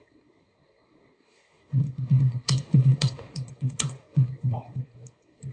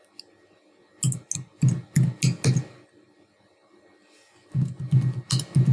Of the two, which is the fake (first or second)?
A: first